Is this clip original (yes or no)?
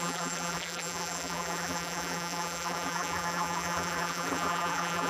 no